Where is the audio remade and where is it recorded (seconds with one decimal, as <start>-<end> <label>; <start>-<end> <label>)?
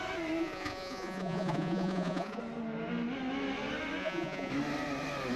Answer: 0.0-0.4 recorded; 0.4-2.4 remade; 2.4-4.0 recorded; 4.0-4.5 remade; 4.5-5.4 recorded